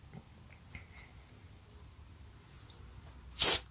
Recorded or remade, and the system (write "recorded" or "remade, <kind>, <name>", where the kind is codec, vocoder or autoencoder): recorded